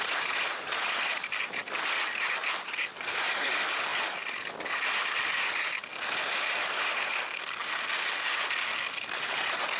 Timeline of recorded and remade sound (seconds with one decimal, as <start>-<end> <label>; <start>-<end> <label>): 0.0-9.8 recorded